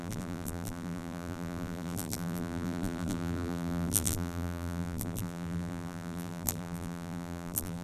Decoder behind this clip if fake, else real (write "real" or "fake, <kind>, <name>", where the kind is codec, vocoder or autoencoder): fake, vocoder, BigVGAN v2